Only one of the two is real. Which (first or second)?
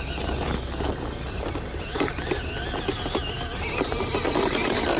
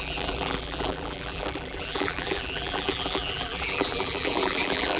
first